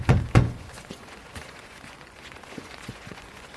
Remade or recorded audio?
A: remade